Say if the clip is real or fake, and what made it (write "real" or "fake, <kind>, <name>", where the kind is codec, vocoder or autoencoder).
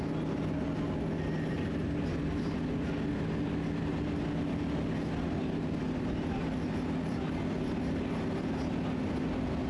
real